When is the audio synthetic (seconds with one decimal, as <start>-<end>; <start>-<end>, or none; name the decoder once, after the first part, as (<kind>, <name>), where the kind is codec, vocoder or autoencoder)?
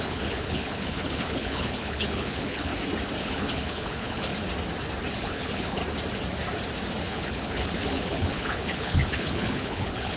0.0-2.7 (codec, HILCodec); 3.2-4.3; 5.1-5.8; 7.0-10.2